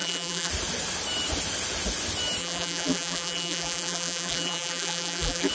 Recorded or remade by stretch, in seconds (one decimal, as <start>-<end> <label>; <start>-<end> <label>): 0.0-0.5 remade; 0.5-2.4 recorded; 2.4-5.5 remade

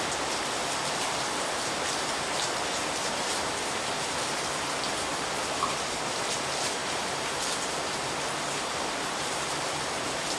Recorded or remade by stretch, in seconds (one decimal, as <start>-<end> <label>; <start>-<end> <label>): 0.0-0.6 recorded; 0.6-1.6 remade; 1.6-3.0 recorded; 3.0-3.5 remade; 3.5-10.4 recorded